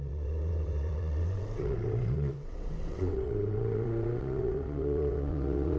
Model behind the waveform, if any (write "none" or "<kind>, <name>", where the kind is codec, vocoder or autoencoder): vocoder, WaveNeXt